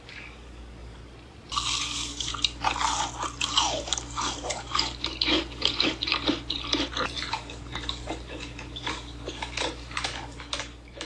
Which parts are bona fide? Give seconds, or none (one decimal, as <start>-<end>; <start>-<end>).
1.0-1.8; 2.3-3.4; 6.1-7.3